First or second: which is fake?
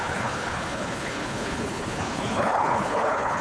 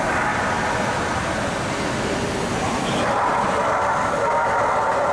first